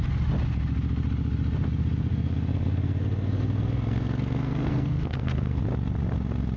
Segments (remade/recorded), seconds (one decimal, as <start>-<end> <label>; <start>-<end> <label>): 0.0-2.1 recorded; 2.1-5.6 remade; 5.6-6.6 recorded